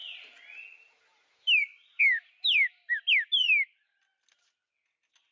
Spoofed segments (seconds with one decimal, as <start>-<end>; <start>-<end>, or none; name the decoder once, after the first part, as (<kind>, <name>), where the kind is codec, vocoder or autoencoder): none